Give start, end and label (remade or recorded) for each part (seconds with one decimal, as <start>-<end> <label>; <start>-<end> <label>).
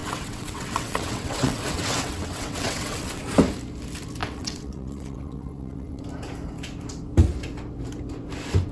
0.0-3.2 remade; 3.2-4.2 recorded; 4.2-6.0 remade; 6.0-8.7 recorded